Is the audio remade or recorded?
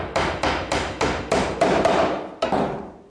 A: recorded